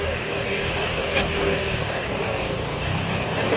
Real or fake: fake